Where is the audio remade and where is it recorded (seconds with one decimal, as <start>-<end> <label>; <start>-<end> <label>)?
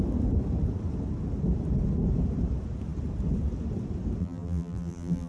0.0-4.2 recorded; 4.2-5.3 remade